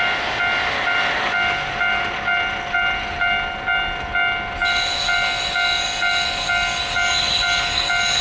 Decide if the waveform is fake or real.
real